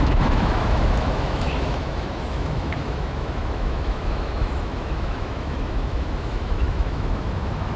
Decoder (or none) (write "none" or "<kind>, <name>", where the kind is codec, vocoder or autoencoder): autoencoder, DAC-VAE